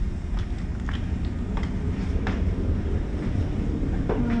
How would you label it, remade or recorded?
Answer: recorded